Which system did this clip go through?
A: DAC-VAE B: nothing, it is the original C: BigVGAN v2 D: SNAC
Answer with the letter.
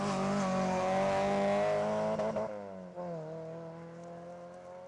B